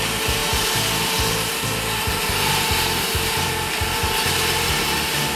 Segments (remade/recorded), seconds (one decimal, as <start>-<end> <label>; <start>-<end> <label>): 0.0-5.4 recorded